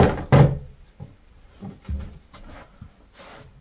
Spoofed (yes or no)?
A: no